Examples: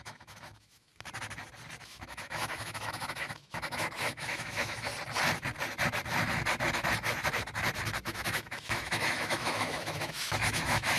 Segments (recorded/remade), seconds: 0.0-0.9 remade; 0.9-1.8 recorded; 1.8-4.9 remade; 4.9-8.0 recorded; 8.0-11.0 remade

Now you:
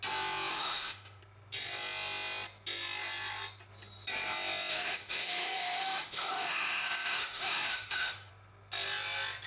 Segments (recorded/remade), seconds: 0.0-0.5 recorded; 0.5-1.2 remade; 1.2-4.7 recorded; 4.7-8.3 remade; 8.3-9.5 recorded

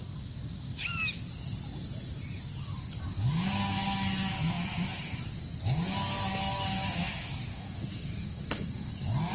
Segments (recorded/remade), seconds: 0.0-7.5 recorded; 7.5-8.9 remade; 8.9-9.3 recorded

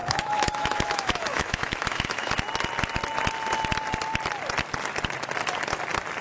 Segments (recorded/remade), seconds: 0.0-2.3 remade; 2.3-6.2 recorded

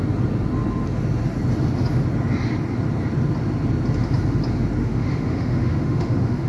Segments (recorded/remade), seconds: 0.0-4.8 recorded; 4.8-6.5 remade

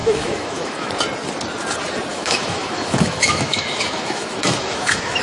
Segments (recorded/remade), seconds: 0.0-0.9 remade; 0.9-2.1 recorded; 2.1-5.2 remade

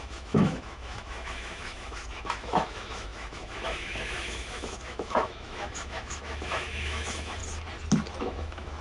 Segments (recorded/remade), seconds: 0.0-7.4 remade; 7.4-8.2 recorded; 8.2-8.8 remade

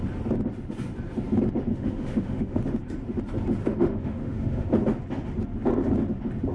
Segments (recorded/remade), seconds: 0.0-1.7 recorded; 1.7-2.6 remade; 2.6-3.6 recorded; 3.6-4.7 remade; 4.7-6.5 recorded